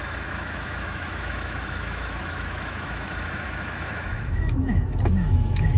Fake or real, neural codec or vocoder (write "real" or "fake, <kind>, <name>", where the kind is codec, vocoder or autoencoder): fake, autoencoder, DAC-VAE